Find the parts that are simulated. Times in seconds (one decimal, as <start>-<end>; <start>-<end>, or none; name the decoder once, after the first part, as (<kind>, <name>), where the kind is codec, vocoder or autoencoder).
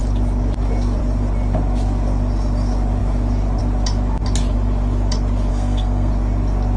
5.5-6.1 (codec, SNAC)